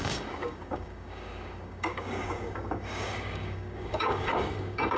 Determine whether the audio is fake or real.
fake